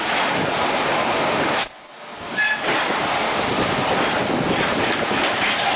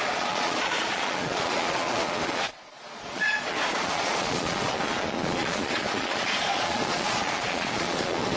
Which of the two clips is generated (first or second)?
second